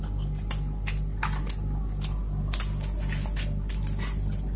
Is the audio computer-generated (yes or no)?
no